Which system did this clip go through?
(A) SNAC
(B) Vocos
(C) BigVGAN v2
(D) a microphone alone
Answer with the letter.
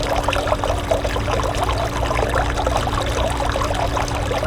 D